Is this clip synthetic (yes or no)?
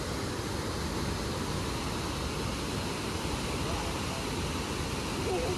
no